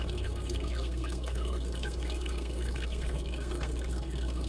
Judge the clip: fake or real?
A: fake